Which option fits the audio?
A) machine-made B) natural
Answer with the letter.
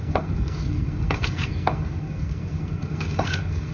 A